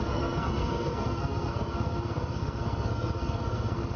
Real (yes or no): no